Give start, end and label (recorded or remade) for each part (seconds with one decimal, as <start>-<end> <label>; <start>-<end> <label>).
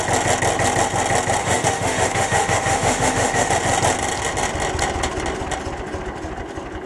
0.0-1.4 recorded; 1.4-3.5 remade; 3.5-6.9 recorded